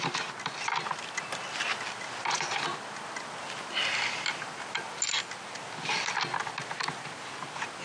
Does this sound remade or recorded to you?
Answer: recorded